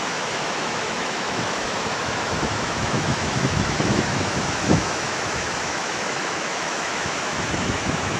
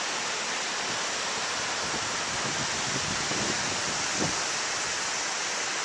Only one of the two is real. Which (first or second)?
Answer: second